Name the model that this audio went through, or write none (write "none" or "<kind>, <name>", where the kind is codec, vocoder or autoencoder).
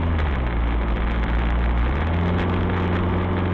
none